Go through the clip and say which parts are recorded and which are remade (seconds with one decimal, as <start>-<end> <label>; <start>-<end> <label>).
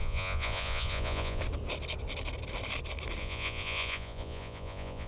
0.0-1.4 remade; 1.4-3.2 recorded; 3.2-5.1 remade